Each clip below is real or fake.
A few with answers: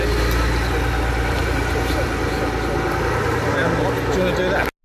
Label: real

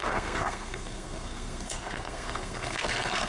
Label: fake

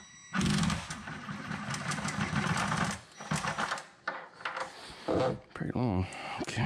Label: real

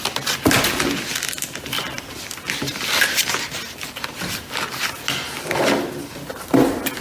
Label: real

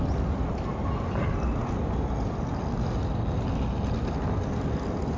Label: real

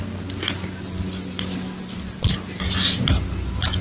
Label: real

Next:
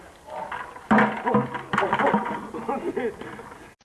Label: real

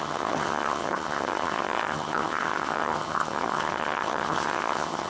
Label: fake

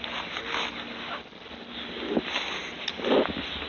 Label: real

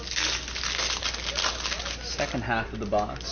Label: real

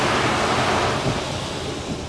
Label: real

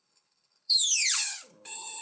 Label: fake